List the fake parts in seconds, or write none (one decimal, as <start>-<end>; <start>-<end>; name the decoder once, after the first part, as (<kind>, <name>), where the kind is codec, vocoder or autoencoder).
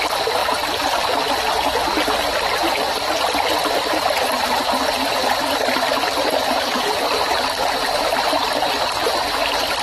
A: 0.4-1.0 (vocoder, BigVGAN v2); 3.6-4.6; 6.3-8.1